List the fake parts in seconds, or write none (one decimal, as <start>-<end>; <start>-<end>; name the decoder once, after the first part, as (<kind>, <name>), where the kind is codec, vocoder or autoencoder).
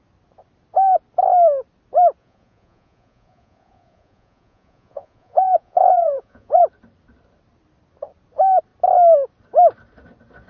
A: 2.2-6.6 (vocoder, Vocos)